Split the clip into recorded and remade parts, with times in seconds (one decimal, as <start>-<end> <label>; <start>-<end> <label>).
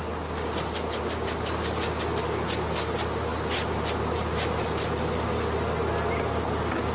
0.0-6.9 recorded